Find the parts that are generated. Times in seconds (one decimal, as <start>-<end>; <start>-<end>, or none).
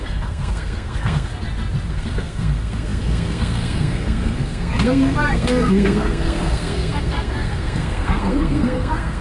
0.0-1.3; 1.9-9.2